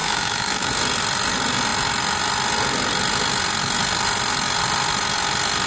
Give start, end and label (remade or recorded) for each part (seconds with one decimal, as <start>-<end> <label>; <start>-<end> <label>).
0.0-0.7 remade; 0.7-5.7 recorded